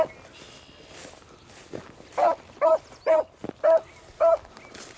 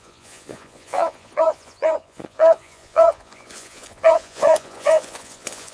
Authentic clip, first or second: first